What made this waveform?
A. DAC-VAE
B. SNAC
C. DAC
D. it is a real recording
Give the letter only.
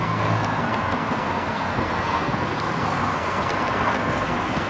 B